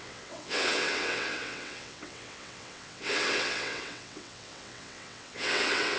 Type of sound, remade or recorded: remade